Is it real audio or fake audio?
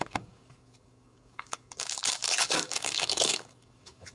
fake